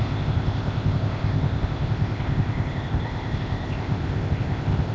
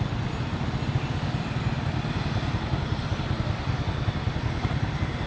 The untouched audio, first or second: second